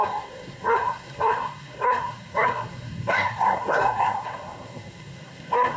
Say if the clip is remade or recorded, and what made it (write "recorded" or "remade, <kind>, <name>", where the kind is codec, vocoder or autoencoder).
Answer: remade, codec, SNAC